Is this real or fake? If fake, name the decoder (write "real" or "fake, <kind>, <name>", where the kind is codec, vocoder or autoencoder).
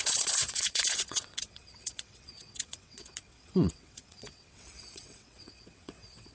fake, vocoder, WaveNeXt